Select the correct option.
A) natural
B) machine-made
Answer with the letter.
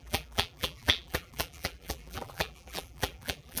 B